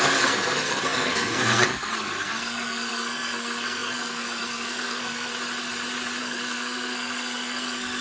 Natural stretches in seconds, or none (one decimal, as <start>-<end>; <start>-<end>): 5.3-6.2